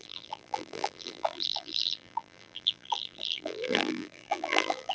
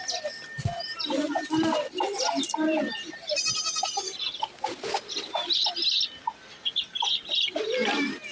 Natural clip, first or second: second